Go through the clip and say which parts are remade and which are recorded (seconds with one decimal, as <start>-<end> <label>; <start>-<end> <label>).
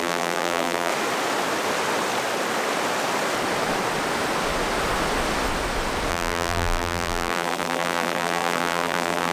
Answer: 0.0-0.9 remade; 0.9-6.1 recorded; 6.1-9.3 remade